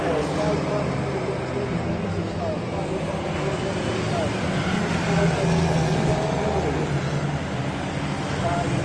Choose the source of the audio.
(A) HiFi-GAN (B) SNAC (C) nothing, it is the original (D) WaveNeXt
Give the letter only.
C